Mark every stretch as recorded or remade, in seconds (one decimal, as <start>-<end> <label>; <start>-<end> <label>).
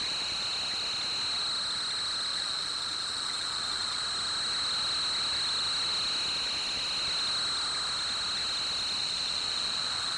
0.0-2.3 recorded; 2.3-4.0 remade; 4.0-9.0 recorded; 9.0-10.2 remade